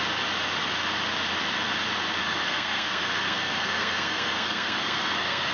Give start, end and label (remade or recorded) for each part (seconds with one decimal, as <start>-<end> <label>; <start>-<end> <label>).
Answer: 0.0-2.2 recorded; 2.2-5.5 remade